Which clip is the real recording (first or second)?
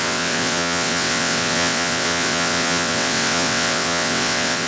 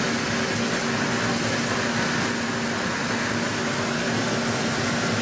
second